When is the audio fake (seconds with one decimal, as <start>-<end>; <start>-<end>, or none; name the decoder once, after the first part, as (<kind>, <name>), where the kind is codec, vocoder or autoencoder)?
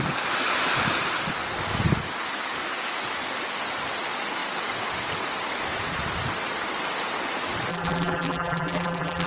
7.7-9.3 (vocoder, BigVGAN v2)